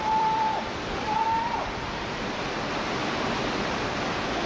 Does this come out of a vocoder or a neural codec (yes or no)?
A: yes